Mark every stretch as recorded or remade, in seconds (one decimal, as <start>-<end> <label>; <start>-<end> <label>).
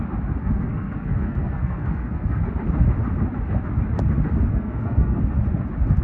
0.0-0.4 recorded; 0.4-2.4 remade; 2.4-4.5 recorded; 4.5-5.2 remade; 5.2-6.0 recorded